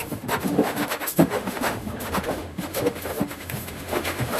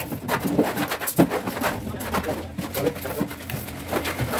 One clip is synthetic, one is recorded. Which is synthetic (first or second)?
first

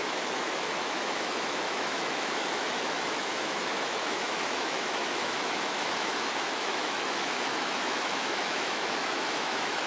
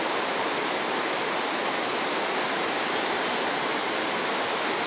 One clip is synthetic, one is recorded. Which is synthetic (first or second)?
first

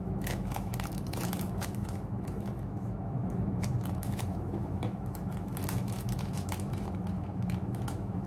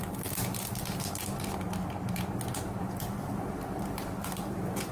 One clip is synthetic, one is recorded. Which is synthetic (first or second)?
first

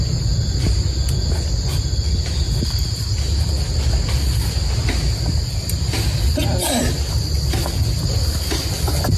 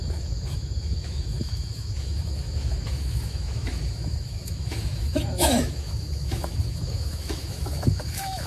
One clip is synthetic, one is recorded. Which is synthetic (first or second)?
second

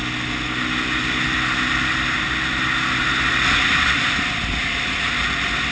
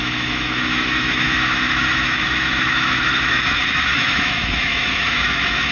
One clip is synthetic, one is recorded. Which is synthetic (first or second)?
second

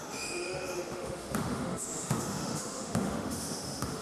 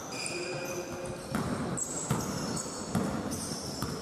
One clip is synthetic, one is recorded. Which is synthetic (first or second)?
first